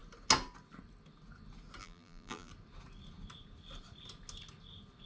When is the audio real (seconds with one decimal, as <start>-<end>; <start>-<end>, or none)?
0.0-1.8; 2.5-5.1